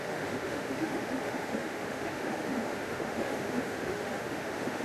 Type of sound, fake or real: fake